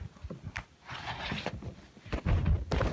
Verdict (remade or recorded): recorded